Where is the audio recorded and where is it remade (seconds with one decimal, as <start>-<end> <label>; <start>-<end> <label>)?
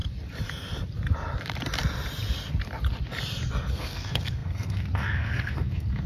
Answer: 0.0-3.7 recorded; 3.7-6.1 remade